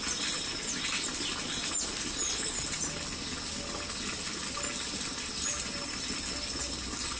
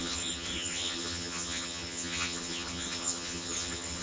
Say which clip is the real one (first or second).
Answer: first